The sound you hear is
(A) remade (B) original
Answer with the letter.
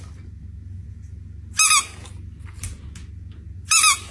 B